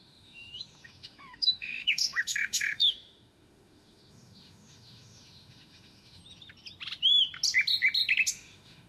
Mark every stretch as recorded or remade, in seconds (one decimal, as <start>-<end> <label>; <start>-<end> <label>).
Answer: 0.0-6.2 remade; 6.2-8.3 recorded; 8.3-8.9 remade